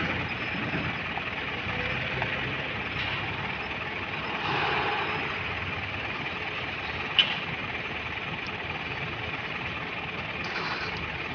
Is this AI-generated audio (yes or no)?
no